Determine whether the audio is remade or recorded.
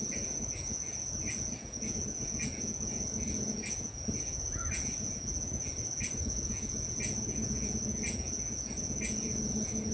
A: remade